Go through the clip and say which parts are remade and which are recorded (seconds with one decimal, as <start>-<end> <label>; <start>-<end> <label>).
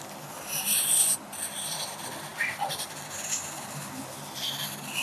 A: 0.0-5.0 recorded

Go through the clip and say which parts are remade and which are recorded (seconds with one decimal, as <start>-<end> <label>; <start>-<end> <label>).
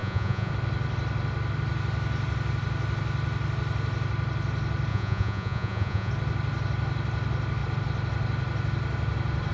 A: 0.0-0.5 remade; 0.5-4.9 recorded; 4.9-6.1 remade; 6.1-9.5 recorded